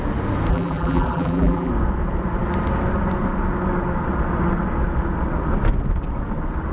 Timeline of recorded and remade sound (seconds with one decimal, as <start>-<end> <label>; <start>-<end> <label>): 0.0-0.5 recorded; 0.5-1.7 remade; 1.7-6.7 recorded

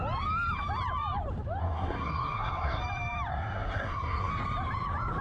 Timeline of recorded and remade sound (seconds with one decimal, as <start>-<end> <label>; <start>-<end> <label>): 0.0-1.6 recorded; 1.6-2.8 remade; 2.8-3.3 recorded; 3.3-4.3 remade; 4.3-5.2 recorded

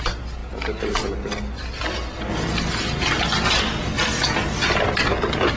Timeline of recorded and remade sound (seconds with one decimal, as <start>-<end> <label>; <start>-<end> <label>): 0.0-5.6 recorded

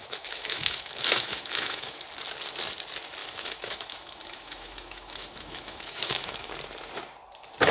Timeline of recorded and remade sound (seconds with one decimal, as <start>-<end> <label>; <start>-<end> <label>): 0.0-2.0 remade; 2.0-3.2 recorded; 3.2-6.5 remade; 6.5-7.7 recorded

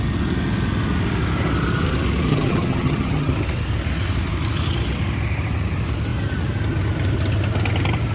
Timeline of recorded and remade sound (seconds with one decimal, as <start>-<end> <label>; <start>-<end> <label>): 0.0-2.3 recorded; 2.3-3.3 remade; 3.3-8.1 recorded